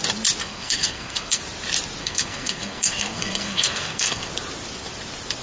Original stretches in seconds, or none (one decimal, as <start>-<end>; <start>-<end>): 0.0-0.4; 1.4-2.0; 4.3-5.4